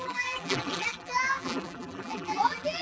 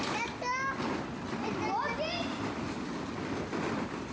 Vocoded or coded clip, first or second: first